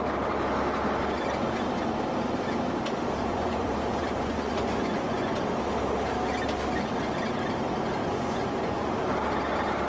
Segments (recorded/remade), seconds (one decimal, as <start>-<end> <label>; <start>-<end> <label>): 0.0-3.3 recorded; 3.3-5.4 remade; 5.4-8.0 recorded; 8.0-8.9 remade; 8.9-9.9 recorded